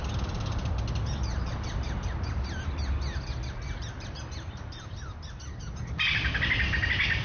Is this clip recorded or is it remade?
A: recorded